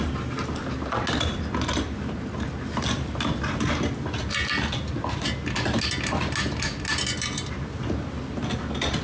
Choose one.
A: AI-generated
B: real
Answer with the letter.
B